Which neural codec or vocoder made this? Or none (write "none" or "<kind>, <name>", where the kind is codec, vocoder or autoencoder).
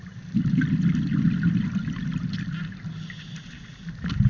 none